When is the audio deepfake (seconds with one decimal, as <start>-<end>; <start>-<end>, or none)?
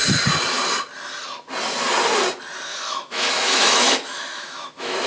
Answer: 2.7-5.1